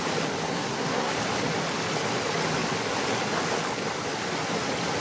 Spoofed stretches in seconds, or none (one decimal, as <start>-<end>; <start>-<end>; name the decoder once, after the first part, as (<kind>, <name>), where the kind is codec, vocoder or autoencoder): 0.5-1.1 (codec, SNAC)